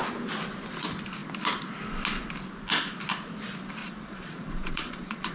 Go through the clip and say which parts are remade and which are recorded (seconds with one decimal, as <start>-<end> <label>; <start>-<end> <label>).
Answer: 0.0-3.8 recorded; 3.8-5.3 remade